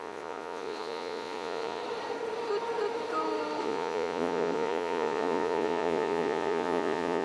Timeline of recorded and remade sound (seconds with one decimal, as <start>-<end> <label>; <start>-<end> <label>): 0.0-1.8 remade; 1.8-3.6 recorded; 3.6-7.2 remade

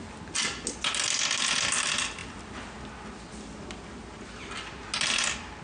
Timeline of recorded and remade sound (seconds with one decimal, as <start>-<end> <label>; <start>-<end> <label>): 0.0-5.6 recorded

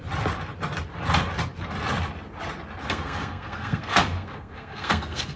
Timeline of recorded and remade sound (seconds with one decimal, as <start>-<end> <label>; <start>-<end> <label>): 0.0-2.8 recorded; 2.8-5.4 remade